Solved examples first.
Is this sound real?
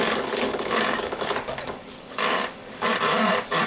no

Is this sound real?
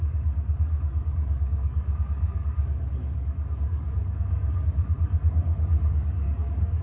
no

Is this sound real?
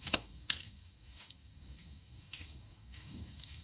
no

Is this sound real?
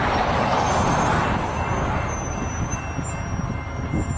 yes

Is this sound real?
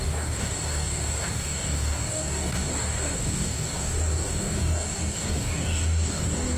no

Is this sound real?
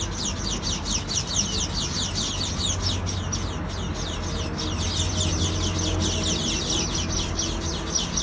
yes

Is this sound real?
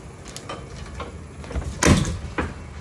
yes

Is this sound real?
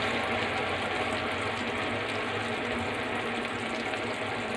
yes